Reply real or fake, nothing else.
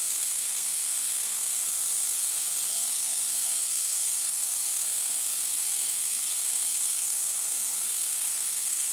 fake